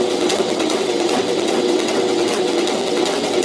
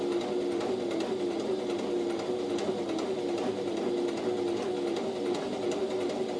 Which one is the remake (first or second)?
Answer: first